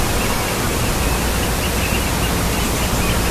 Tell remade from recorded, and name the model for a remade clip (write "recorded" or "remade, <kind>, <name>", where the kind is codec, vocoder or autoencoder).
recorded